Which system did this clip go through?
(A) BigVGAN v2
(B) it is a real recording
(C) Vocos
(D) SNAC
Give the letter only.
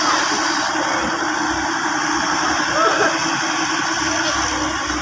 B